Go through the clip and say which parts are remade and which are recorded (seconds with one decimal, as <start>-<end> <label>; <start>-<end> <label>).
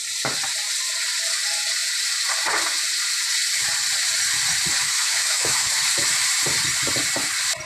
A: 0.0-4.8 recorded; 4.8-5.8 remade; 5.8-7.7 recorded